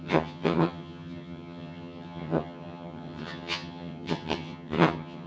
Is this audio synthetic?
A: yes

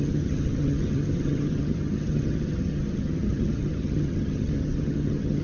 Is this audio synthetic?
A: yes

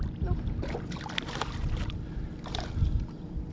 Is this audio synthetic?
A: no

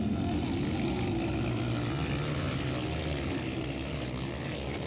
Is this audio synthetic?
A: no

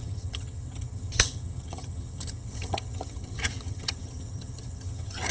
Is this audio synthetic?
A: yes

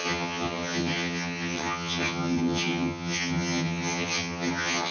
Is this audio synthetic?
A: yes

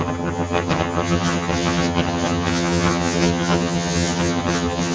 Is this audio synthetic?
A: yes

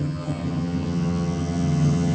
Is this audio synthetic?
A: yes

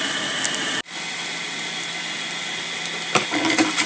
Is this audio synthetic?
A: no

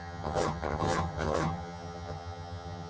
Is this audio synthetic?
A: yes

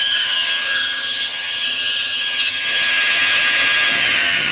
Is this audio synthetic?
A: yes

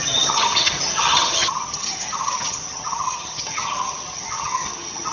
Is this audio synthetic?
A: yes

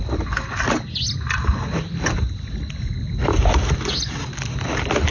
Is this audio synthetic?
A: no